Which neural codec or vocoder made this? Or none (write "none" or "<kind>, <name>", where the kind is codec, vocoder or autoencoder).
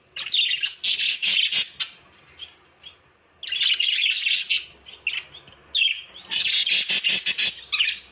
none